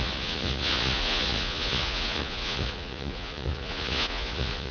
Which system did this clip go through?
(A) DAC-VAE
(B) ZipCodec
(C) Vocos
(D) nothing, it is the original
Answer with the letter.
C